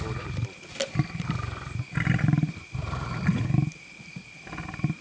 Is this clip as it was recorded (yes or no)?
yes